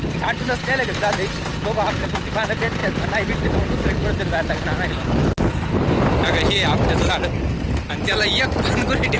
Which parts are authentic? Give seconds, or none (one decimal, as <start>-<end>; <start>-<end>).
0.0-9.2